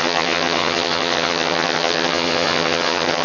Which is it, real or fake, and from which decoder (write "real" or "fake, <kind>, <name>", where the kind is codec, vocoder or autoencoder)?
fake, vocoder, HiFi-GAN